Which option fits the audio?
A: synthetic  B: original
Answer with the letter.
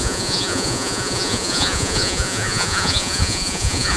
A